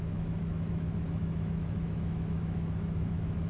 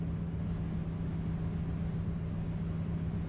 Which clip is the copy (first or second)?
first